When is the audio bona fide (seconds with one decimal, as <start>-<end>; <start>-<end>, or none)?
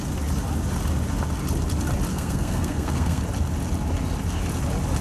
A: 0.0-2.1; 3.2-5.0